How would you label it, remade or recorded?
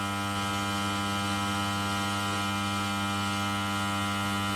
recorded